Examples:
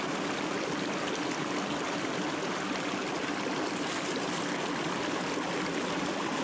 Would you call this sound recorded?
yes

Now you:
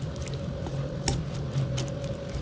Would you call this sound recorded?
yes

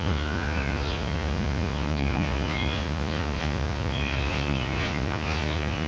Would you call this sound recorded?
no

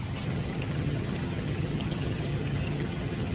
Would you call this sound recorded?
no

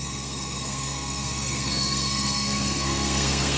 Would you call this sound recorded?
no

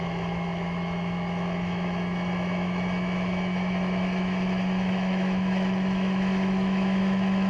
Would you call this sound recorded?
no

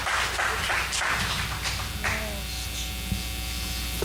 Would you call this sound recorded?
yes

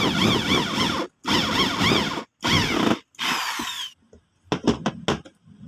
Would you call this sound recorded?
yes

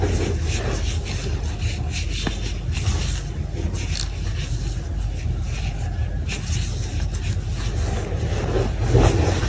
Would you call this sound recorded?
yes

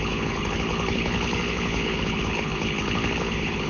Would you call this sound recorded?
no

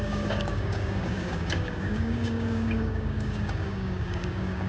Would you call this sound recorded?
no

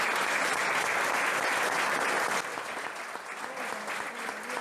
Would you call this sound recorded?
yes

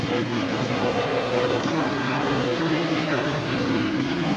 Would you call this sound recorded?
no